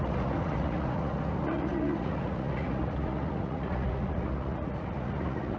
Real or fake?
fake